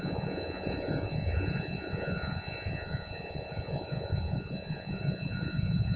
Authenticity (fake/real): fake